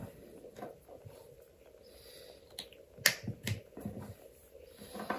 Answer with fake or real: real